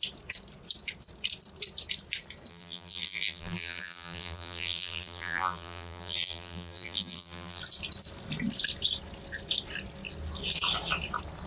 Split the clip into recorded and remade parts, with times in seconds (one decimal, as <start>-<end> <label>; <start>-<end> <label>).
0.0-2.5 recorded; 2.5-7.6 remade; 7.6-11.5 recorded